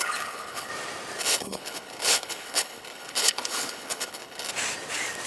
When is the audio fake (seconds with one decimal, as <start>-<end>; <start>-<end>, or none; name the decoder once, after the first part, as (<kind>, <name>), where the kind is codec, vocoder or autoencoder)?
0.0-0.7 (codec, HILCodec); 1.2-4.5